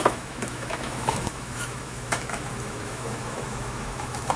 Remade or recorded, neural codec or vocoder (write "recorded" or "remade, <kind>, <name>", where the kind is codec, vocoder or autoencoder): remade, autoencoder, DAC-VAE